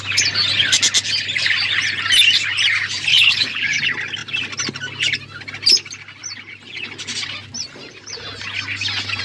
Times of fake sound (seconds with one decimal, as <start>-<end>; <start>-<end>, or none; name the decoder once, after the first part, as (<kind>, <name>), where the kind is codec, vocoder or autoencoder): 3.1-3.8 (codec, HILCodec)